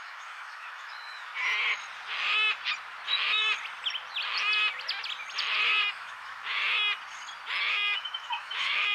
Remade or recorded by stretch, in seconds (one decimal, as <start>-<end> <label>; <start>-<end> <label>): 0.0-1.3 remade; 1.3-5.9 recorded; 5.9-6.6 remade; 6.6-7.7 recorded; 7.7-8.9 remade